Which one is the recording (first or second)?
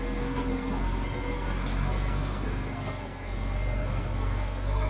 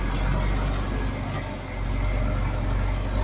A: second